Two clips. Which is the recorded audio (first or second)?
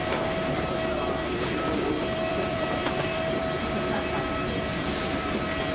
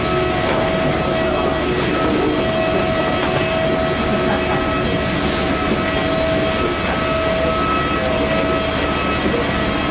second